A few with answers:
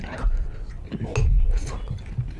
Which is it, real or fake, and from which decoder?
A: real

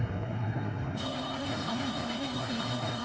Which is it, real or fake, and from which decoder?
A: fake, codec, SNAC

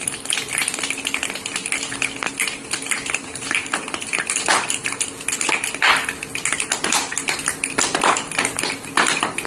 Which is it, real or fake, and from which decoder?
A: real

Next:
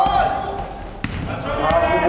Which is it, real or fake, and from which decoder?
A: real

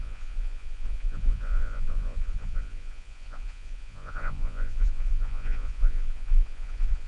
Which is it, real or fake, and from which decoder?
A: fake, vocoder, Vocos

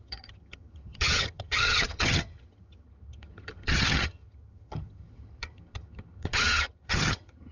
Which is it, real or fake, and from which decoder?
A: fake, vocoder, HiFi-GAN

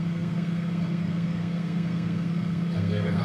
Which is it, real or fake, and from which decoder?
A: fake, codec, SNAC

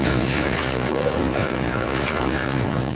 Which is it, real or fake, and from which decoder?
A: fake, vocoder, Vocos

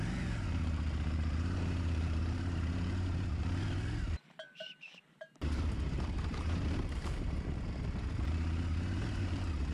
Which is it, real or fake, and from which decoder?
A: fake, vocoder, BigVGAN v2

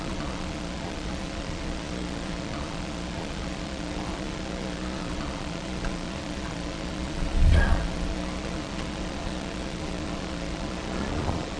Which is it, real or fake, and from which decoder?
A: fake, vocoder, Vocos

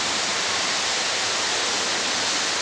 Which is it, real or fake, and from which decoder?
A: real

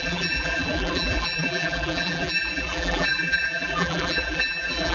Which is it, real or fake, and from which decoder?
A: fake, vocoder, BigVGAN v2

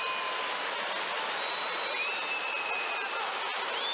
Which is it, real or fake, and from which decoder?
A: real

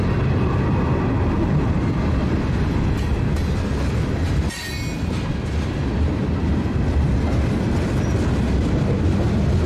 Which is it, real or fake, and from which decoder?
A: real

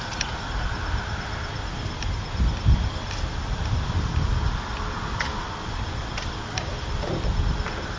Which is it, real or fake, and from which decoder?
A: real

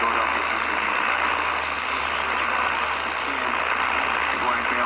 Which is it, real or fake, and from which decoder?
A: real